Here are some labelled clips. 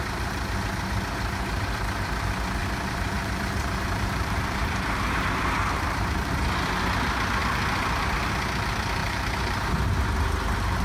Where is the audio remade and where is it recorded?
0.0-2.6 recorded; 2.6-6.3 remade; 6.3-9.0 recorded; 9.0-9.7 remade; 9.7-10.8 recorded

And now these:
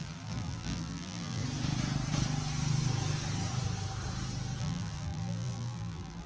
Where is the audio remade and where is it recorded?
0.0-1.4 remade; 1.4-4.6 recorded; 4.6-6.3 remade

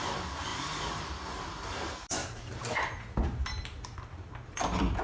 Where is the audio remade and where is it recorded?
0.0-0.5 recorded; 0.5-1.8 remade; 1.8-2.2 recorded; 2.2-2.9 remade; 2.9-5.0 recorded